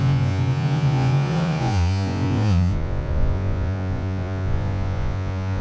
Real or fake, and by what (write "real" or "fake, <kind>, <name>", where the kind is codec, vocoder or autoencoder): fake, vocoder, Vocos